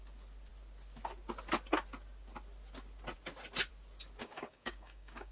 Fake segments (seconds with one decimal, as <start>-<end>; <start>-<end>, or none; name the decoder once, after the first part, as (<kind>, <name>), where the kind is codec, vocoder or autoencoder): 4.2-5.3 (codec, DAC)